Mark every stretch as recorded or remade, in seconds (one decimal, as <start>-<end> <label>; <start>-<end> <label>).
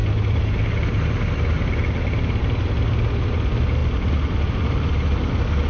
0.0-5.7 recorded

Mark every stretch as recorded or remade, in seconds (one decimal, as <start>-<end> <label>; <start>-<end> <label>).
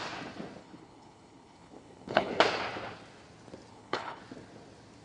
0.0-0.6 recorded; 0.6-2.3 remade; 2.3-3.7 recorded; 3.7-4.2 remade; 4.2-5.0 recorded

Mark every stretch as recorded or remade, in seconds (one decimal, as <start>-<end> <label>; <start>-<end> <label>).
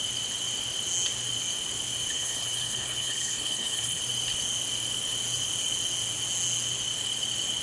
0.0-2.1 recorded; 2.1-4.0 remade; 4.0-7.6 recorded